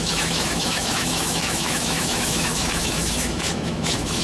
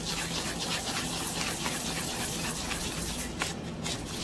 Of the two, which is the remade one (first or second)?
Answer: first